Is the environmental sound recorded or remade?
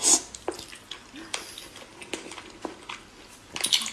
recorded